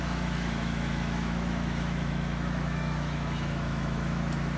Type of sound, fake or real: fake